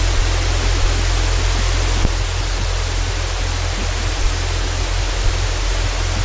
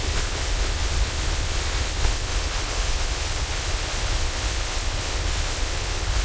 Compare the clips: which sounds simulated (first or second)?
second